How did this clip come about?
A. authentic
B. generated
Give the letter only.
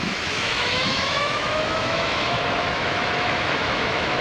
B